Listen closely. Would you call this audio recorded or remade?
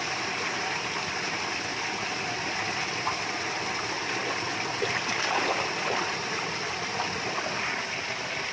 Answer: recorded